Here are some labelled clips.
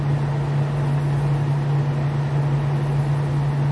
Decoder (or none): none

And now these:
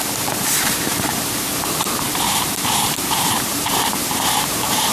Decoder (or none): vocoder, BigVGAN v2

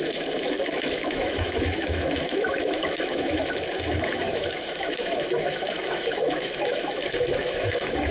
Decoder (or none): autoencoder, DAC-VAE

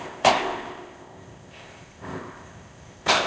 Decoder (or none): codec, ZipCodec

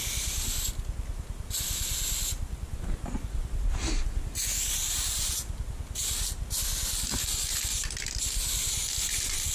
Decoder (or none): none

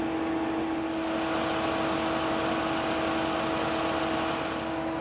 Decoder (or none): none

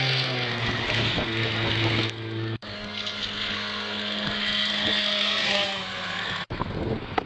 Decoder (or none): codec, SNAC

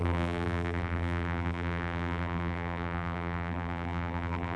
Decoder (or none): vocoder, BigVGAN v2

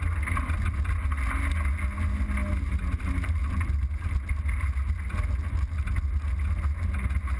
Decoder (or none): none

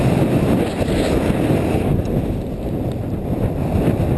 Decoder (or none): none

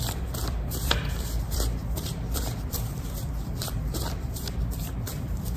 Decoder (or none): vocoder, BigVGAN v2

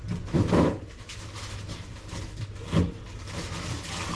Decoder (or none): none